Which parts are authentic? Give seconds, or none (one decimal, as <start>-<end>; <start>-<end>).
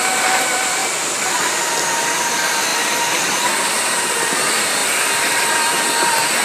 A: 0.0-6.4